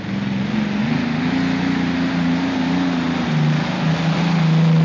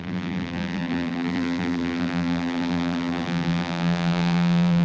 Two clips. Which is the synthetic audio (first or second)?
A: second